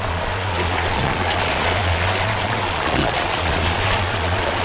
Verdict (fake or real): fake